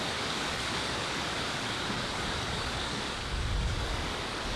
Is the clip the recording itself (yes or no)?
no